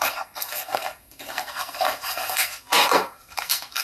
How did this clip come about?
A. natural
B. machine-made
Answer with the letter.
B